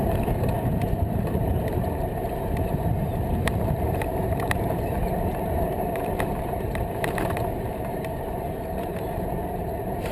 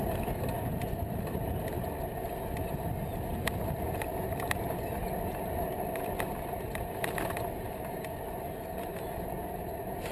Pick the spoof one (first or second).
first